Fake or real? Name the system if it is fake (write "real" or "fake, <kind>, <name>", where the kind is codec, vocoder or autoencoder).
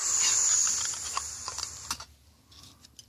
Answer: real